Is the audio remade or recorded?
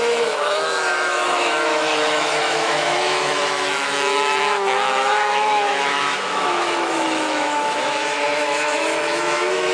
remade